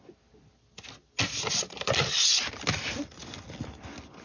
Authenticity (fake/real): real